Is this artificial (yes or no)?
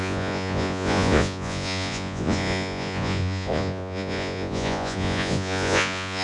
yes